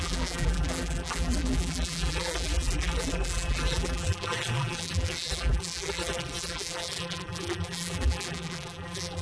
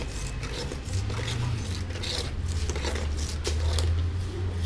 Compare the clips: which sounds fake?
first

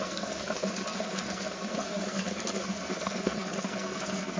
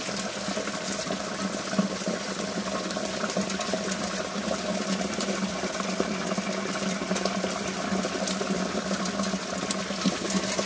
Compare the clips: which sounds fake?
first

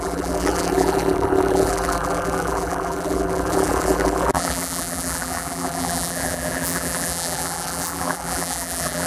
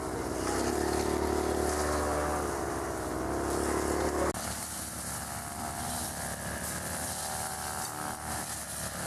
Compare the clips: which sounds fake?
first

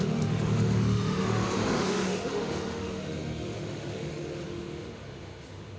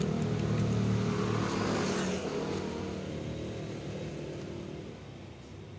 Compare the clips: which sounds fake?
first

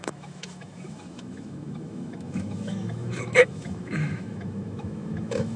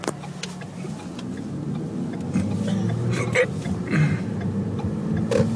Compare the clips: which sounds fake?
first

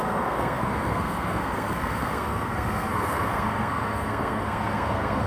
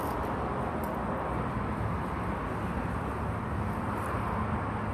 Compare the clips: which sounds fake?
first